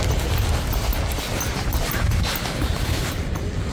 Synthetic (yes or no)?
no